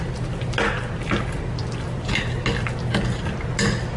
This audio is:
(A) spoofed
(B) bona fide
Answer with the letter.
B